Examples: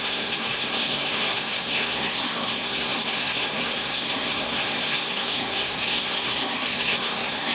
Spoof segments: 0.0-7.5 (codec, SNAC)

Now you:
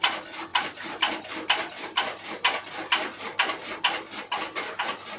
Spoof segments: none

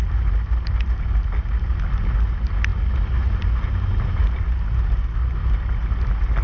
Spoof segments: none